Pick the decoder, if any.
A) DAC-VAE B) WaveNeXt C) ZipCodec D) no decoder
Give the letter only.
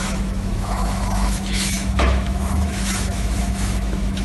A